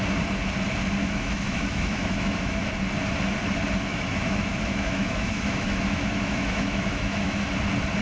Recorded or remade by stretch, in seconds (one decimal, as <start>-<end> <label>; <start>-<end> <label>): 0.0-1.0 recorded; 1.0-2.7 remade; 2.7-3.9 recorded; 3.9-7.5 remade; 7.5-8.0 recorded